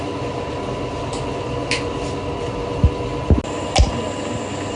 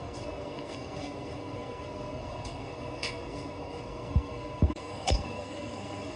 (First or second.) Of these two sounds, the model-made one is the second